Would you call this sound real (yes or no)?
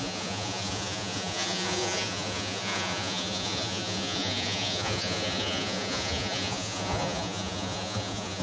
no